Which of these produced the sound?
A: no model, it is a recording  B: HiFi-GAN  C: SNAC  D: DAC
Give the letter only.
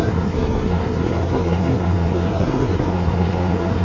C